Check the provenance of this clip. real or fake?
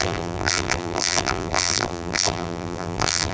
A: fake